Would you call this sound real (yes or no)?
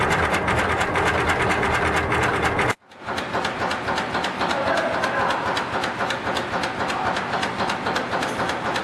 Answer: yes